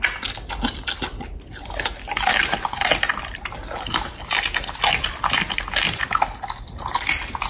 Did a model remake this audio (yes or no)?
no